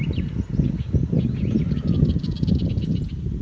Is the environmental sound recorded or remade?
recorded